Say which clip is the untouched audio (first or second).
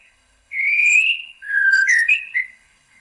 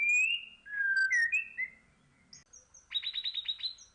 second